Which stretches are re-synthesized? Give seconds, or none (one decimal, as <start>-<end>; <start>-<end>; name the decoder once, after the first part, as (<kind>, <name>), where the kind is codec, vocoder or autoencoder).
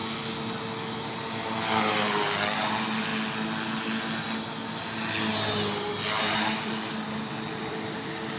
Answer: none